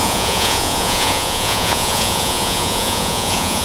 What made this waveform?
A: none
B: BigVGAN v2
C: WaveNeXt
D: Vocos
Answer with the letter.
D